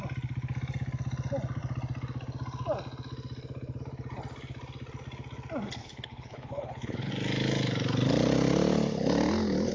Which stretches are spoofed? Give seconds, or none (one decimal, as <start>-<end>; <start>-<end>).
5.8-7.1